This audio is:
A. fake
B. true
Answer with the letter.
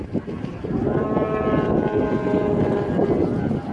B